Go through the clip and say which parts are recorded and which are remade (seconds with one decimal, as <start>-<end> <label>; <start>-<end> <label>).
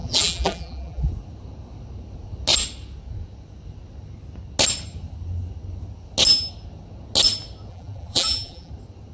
0.0-1.1 remade; 1.1-7.7 recorded; 7.7-8.7 remade; 8.7-9.1 recorded